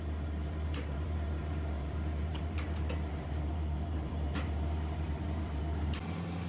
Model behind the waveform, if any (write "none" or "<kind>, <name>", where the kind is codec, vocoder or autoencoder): vocoder, BigVGAN v2